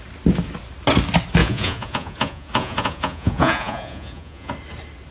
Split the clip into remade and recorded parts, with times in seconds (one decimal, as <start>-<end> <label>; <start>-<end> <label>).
0.0-1.4 recorded; 1.4-4.5 remade; 4.5-5.1 recorded